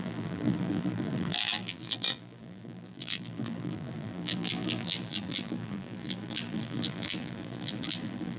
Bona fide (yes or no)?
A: no